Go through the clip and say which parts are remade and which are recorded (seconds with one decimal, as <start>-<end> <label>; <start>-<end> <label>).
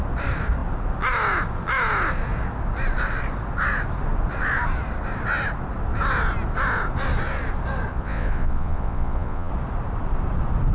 0.0-7.9 recorded; 7.9-9.5 remade; 9.5-10.7 recorded